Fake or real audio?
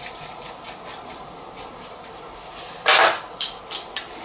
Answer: real